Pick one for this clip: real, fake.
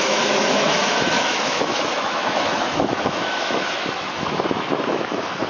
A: fake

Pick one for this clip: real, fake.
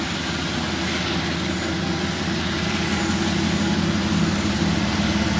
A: real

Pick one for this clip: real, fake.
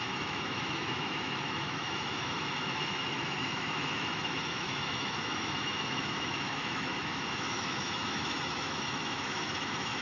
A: fake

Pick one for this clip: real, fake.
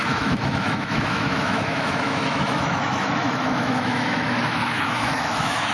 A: fake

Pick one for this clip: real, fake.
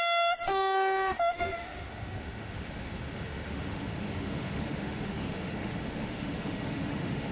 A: fake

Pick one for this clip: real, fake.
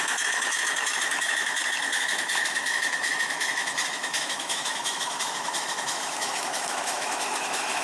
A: fake